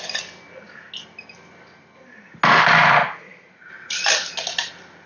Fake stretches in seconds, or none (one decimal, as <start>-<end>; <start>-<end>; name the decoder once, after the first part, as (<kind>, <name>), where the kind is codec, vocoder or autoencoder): 3.0-3.7 (vocoder, Vocos)